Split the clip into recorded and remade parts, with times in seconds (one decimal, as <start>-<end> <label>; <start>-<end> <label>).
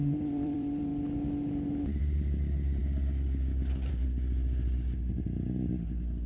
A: 0.0-0.9 remade; 0.9-2.0 recorded; 2.0-2.8 remade; 2.8-3.9 recorded; 3.9-6.3 remade